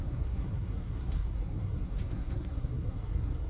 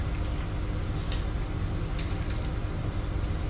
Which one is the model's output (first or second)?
first